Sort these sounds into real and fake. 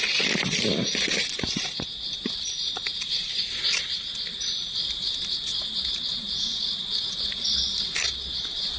real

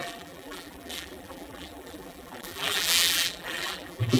fake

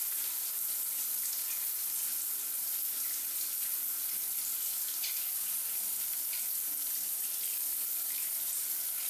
real